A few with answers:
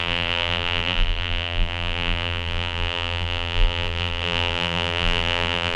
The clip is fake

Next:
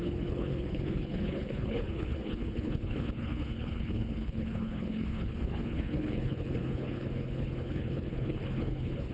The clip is fake